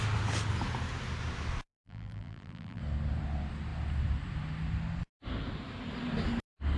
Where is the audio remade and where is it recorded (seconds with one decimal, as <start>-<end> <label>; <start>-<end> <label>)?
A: 0.0-1.7 recorded; 1.7-2.8 remade; 2.8-6.8 recorded